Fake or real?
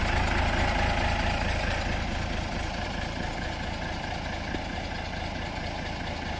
real